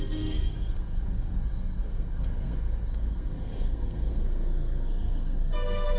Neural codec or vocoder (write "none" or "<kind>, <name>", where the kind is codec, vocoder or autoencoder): codec, SNAC